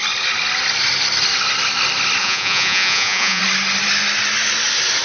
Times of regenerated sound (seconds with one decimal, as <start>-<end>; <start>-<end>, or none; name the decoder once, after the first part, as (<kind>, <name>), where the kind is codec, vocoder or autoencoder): 2.2-3.4 (vocoder, Vocos)